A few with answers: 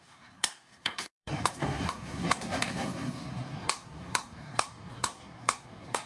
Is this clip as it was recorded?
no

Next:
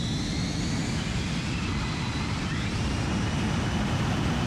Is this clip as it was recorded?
yes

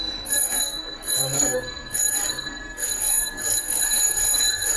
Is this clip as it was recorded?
no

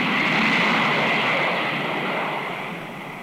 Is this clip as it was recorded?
yes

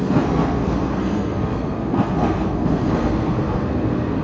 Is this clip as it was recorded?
no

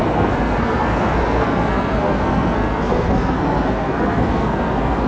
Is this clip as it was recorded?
no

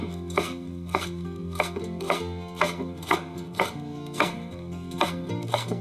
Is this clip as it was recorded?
no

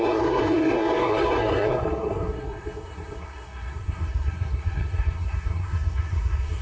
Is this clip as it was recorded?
no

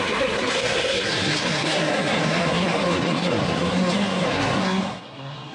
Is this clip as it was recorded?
no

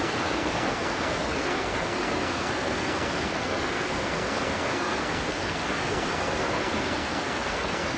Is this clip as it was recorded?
no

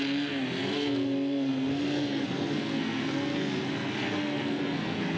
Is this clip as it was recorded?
no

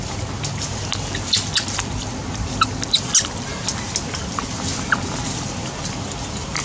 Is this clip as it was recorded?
yes